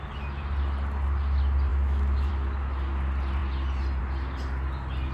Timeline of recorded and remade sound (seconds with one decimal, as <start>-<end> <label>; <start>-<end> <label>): 0.0-1.7 recorded; 1.7-2.3 remade; 2.3-5.1 recorded

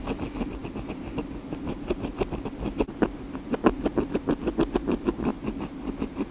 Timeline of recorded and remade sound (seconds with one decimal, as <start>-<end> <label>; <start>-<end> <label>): 0.0-6.3 recorded

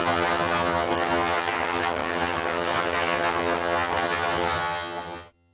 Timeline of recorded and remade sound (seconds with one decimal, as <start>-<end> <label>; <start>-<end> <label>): 0.0-5.5 remade

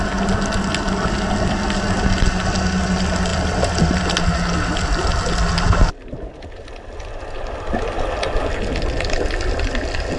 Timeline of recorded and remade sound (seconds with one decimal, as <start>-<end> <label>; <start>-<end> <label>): 0.0-10.2 recorded

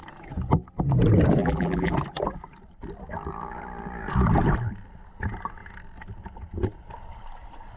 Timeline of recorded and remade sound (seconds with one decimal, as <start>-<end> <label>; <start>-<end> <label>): 0.0-1.4 recorded; 1.4-1.9 remade; 1.9-7.8 recorded

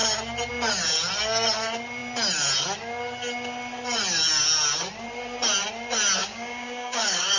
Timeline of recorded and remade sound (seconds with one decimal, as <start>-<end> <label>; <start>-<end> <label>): 0.0-6.2 recorded; 6.2-7.4 remade

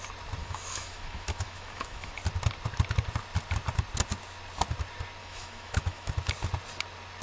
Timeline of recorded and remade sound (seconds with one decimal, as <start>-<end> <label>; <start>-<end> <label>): 0.0-0.4 recorded; 0.4-2.2 remade; 2.2-5.2 recorded; 5.2-6.1 remade; 6.1-7.2 recorded

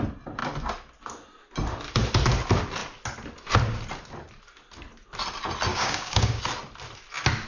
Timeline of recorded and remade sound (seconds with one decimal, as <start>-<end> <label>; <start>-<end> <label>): 0.0-5.7 recorded; 5.7-6.4 remade; 6.4-7.5 recorded